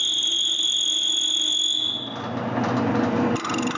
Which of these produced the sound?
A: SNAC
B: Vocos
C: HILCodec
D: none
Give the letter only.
D